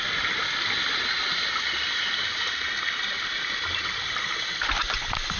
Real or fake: real